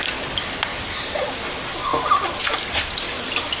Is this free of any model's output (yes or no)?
yes